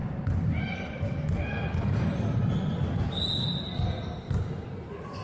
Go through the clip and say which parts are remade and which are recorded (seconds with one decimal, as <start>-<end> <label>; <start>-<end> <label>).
0.0-5.2 recorded